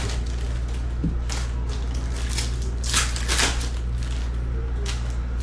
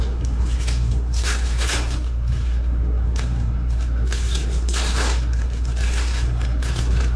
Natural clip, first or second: first